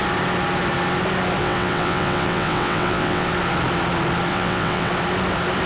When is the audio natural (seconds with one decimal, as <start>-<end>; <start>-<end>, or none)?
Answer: 0.0-1.4; 3.3-4.3; 4.9-5.7